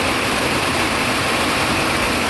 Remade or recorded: recorded